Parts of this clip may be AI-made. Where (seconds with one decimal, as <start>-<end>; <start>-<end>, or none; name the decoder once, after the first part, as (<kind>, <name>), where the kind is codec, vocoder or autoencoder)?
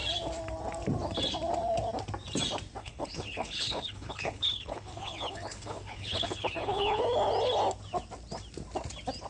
2.8-7.0 (codec, HILCodec)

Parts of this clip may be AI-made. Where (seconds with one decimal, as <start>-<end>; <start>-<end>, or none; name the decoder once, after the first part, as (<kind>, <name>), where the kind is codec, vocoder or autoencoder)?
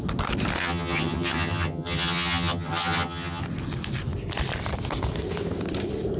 0.6-3.4 (vocoder, HiFi-GAN)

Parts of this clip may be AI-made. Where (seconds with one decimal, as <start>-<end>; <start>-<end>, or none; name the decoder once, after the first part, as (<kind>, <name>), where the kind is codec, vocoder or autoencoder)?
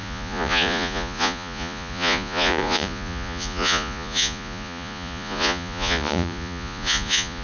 0.0-7.4 (vocoder, Vocos)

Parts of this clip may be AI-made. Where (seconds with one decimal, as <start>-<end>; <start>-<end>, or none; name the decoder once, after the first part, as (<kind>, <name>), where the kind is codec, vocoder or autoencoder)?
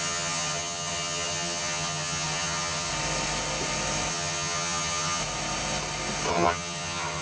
0.0-2.9 (vocoder, HiFi-GAN); 4.1-5.2; 6.3-7.2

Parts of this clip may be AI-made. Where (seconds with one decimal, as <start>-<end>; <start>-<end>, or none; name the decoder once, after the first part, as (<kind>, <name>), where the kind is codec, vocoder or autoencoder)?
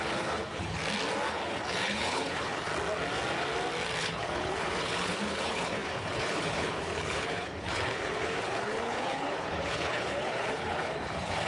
0.0-0.8 (codec, HILCodec); 1.3-2.7; 4.0-11.5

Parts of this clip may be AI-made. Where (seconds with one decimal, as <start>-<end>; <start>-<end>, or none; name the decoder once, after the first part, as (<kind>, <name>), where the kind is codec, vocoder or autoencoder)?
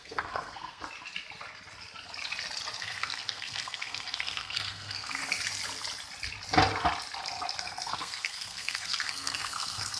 0.0-0.8 (codec, SNAC); 2.8-5.2; 7.6-10.0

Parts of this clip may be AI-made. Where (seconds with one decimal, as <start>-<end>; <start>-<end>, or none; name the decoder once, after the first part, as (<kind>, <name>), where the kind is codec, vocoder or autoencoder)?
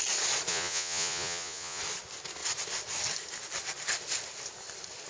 0.5-1.8 (vocoder, Vocos)